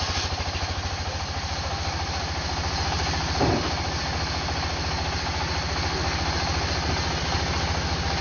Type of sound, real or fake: real